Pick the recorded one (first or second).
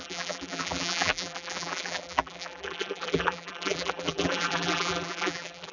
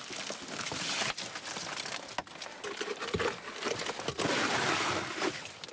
second